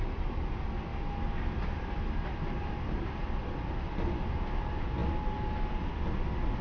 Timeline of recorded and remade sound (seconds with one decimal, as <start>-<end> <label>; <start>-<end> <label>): 0.0-6.6 recorded